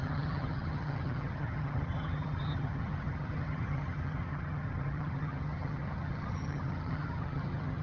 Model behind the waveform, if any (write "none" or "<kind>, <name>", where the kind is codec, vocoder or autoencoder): vocoder, HiFi-GAN